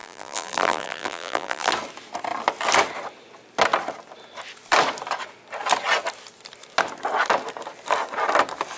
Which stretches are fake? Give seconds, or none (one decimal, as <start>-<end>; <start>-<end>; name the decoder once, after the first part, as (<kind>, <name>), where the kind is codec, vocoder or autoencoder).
0.0-1.7 (vocoder, BigVGAN v2)